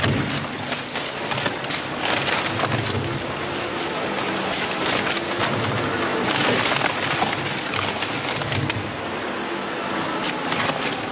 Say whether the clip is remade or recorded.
recorded